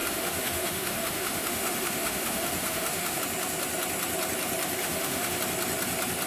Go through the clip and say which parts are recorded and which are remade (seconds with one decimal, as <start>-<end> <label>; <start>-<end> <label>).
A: 0.0-3.2 remade; 3.2-4.8 recorded; 4.8-5.4 remade; 5.4-6.3 recorded